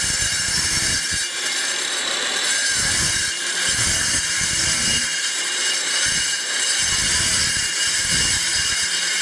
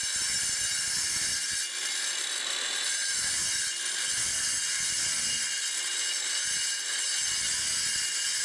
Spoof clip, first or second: first